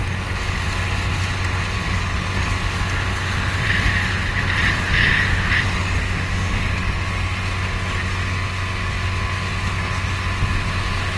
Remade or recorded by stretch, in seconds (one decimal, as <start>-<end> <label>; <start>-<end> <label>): 0.0-6.0 recorded; 6.0-6.6 remade; 6.6-11.2 recorded